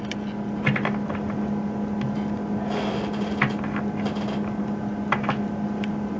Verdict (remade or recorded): recorded